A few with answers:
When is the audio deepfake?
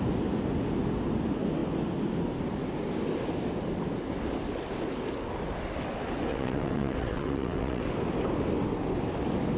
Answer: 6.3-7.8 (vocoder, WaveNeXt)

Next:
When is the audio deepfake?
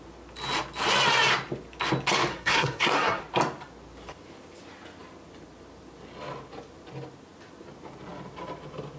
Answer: 2.3-3.2 (codec, SNAC)